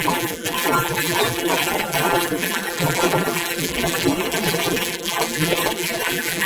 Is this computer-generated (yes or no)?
yes